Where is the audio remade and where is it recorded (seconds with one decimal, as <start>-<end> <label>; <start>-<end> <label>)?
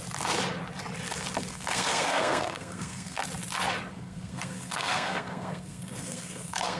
0.0-1.5 recorded; 1.5-3.2 remade; 3.2-3.9 recorded; 3.9-6.8 remade